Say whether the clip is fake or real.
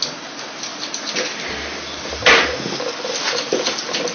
real